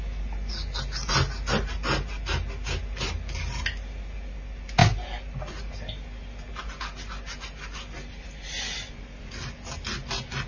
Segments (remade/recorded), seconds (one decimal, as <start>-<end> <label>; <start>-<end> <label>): 0.0-10.5 recorded